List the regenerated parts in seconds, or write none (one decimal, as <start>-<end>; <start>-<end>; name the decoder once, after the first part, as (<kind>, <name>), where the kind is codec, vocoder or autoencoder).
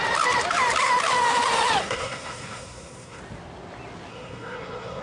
1.8-3.2 (codec, SNAC); 4.1-5.0